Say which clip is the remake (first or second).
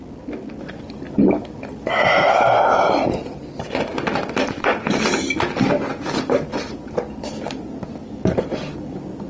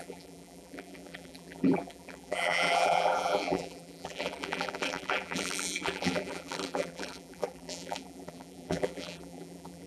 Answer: second